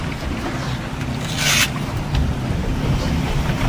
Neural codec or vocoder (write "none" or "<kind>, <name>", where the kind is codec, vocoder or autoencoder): none